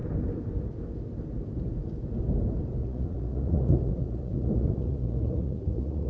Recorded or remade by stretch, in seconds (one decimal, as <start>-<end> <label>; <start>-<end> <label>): 0.0-2.8 recorded; 2.8-6.1 remade